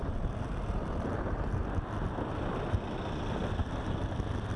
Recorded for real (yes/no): yes